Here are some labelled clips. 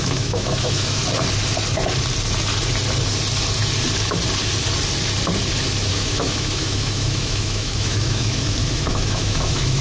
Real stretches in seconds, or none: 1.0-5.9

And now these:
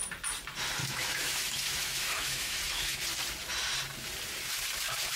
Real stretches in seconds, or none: 0.0-0.8; 3.0-5.2

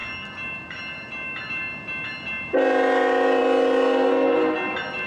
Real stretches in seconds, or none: 0.0-5.1

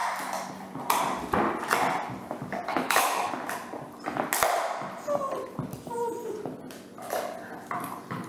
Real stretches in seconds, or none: 0.0-2.7; 3.3-8.3

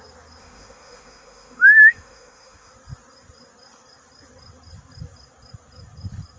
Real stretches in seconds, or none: 0.0-0.4; 2.7-6.4